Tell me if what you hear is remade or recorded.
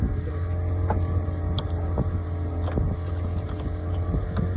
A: recorded